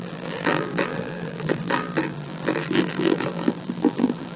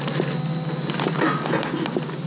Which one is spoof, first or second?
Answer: first